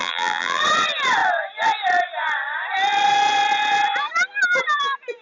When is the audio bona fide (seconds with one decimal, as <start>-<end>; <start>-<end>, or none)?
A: 0.6-5.2